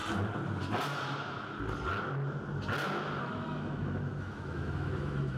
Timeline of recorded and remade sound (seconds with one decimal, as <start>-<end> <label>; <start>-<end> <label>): 0.0-3.2 recorded; 3.2-5.4 remade